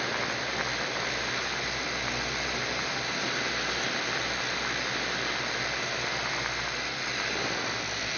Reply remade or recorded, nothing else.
recorded